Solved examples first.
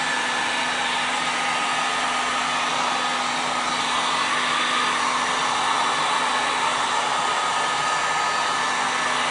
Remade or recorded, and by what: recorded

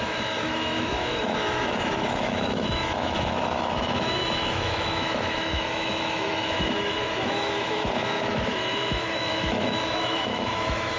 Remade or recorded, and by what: remade, autoencoder, DAC-VAE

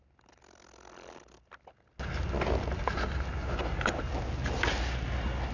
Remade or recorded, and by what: recorded